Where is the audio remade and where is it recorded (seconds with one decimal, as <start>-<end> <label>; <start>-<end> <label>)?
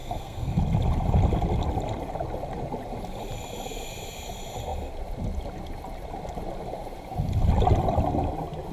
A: 0.0-0.6 remade; 0.6-8.7 recorded